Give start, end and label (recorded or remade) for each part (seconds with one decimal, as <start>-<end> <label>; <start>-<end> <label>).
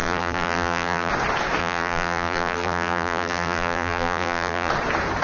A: 0.0-1.1 remade; 1.1-1.6 recorded; 1.6-4.7 remade; 4.7-5.2 recorded